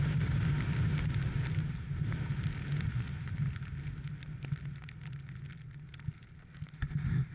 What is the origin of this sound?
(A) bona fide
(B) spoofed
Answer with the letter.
A